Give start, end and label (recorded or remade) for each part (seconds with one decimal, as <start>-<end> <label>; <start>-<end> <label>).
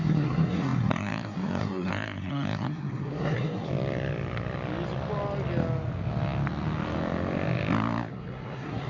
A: 0.0-3.7 remade; 3.7-8.1 recorded; 8.1-8.9 remade